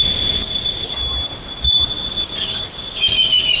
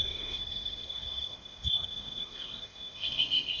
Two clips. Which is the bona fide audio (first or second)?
first